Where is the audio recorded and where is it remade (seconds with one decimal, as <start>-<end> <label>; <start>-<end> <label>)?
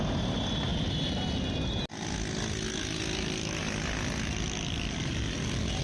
0.0-5.8 recorded